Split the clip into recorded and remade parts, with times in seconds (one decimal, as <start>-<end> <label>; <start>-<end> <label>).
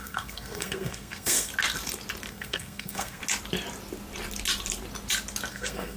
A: 0.0-1.5 remade; 1.5-2.3 recorded; 2.3-3.2 remade; 3.2-5.5 recorded; 5.5-6.0 remade